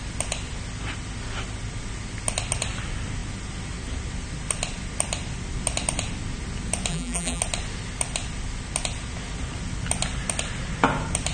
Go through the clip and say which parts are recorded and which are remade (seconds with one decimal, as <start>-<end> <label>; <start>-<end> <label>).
0.0-6.9 recorded; 6.9-7.4 remade; 7.4-11.3 recorded